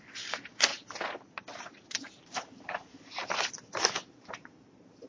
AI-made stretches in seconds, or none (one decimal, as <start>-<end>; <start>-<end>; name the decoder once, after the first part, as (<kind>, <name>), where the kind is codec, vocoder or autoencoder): none